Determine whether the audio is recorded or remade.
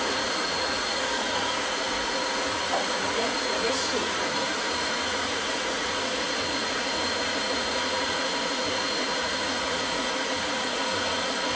remade